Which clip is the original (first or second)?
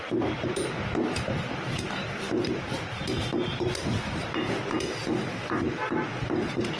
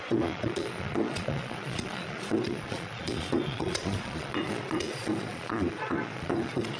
first